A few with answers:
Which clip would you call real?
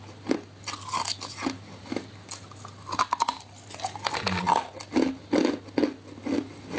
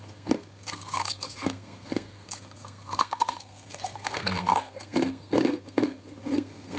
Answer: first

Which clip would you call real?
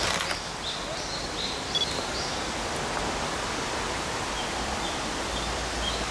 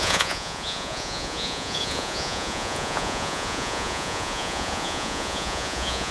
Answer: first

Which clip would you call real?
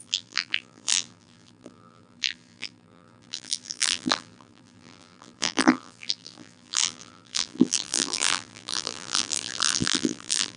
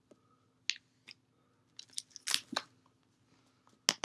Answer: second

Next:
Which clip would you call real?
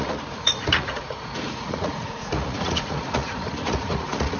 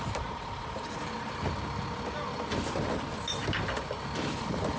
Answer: second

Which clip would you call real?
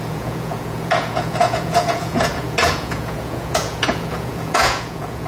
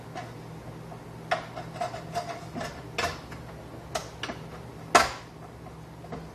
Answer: second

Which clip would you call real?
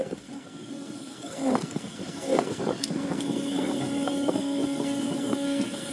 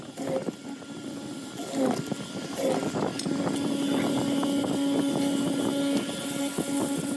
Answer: second